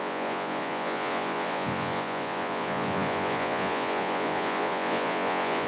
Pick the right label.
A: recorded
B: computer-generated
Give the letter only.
B